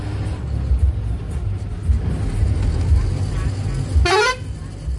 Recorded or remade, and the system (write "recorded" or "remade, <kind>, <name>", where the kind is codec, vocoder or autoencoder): recorded